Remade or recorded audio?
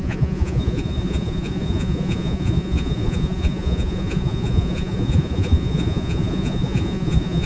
remade